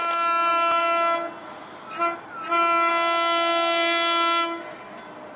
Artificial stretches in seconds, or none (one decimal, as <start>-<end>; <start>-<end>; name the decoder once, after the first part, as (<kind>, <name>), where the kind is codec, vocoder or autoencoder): none